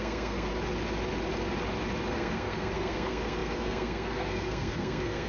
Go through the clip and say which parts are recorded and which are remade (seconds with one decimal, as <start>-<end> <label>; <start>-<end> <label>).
0.0-0.5 remade; 0.5-2.1 recorded; 2.1-5.3 remade

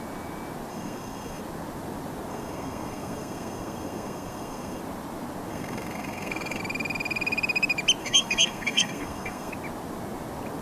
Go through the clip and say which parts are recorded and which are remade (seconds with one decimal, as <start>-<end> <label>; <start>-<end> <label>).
0.0-0.7 recorded; 0.7-1.4 remade; 1.4-2.3 recorded; 2.3-4.8 remade; 4.8-5.5 recorded; 5.5-6.6 remade; 6.6-8.0 recorded; 8.0-9.5 remade; 9.5-10.6 recorded

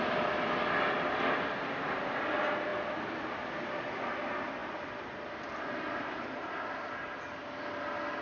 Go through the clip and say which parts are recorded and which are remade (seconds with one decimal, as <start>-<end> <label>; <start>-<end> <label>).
0.0-8.2 recorded

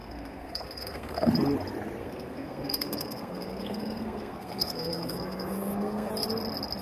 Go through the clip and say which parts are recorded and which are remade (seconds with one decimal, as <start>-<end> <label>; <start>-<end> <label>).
0.0-1.3 remade; 1.3-2.0 recorded; 2.0-6.1 remade; 6.1-6.8 recorded

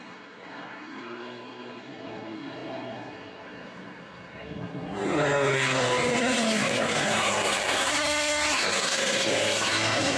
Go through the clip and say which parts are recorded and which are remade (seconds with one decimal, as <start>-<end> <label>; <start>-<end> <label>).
0.0-10.2 remade

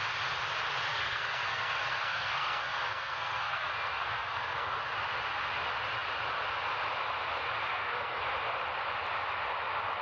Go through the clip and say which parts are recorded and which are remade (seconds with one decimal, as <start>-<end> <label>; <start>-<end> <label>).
0.0-0.9 recorded; 0.9-4.8 remade; 4.8-7.7 recorded; 7.7-8.2 remade; 8.2-10.0 recorded

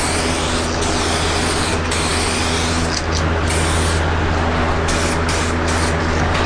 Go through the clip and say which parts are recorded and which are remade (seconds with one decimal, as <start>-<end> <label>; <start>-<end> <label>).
0.0-6.5 recorded